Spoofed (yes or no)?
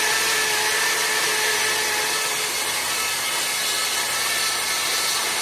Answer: no